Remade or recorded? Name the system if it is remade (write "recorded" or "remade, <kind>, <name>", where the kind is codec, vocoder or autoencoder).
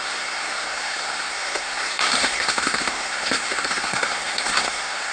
remade, codec, SNAC